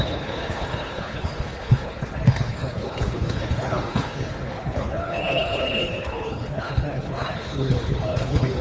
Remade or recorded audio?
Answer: remade